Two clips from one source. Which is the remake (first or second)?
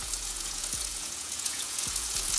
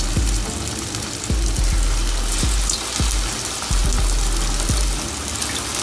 first